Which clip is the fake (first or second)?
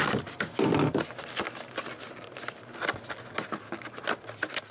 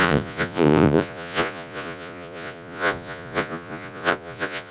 second